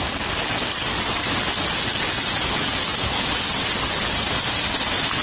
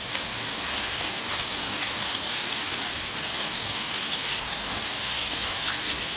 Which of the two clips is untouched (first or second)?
first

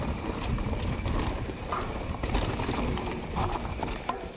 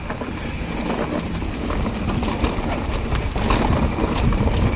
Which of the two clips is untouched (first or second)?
second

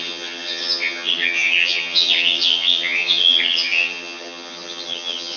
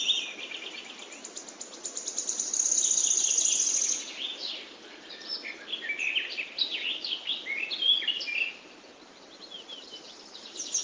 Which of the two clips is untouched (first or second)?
second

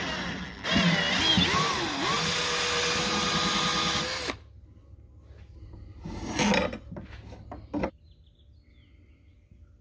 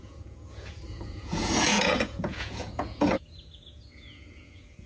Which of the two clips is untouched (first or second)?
first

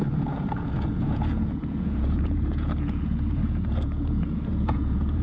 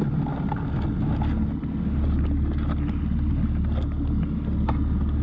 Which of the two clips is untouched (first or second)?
second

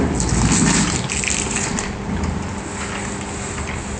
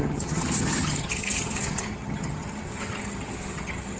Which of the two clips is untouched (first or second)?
first